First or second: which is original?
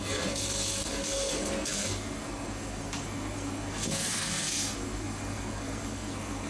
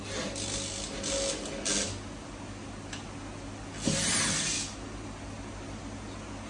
second